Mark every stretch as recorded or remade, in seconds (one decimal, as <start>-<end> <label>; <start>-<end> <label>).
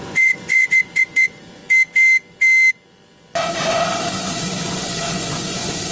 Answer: 0.0-1.6 remade; 1.6-3.6 recorded; 3.6-5.9 remade